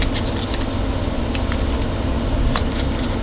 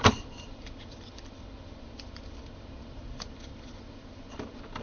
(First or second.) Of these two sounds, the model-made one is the second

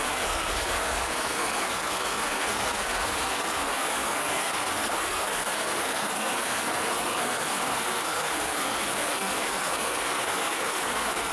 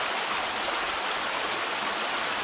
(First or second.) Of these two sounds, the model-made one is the first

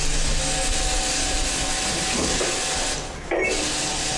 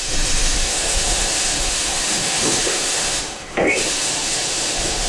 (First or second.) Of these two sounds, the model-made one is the second